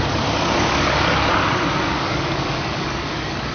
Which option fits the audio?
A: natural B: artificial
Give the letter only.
B